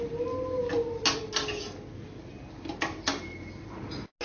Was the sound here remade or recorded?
recorded